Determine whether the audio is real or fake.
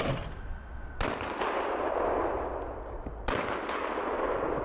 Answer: real